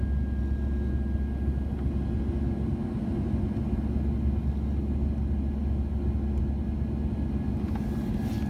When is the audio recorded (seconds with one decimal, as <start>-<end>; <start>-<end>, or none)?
0.0-8.5